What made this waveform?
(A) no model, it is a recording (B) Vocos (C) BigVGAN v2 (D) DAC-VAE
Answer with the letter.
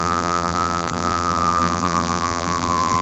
C